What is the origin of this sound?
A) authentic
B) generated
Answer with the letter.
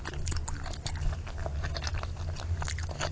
A